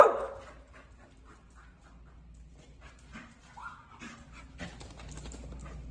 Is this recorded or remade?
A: recorded